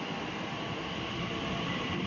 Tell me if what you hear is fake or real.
real